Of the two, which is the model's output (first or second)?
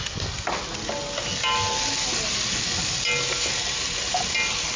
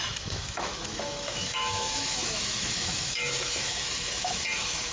second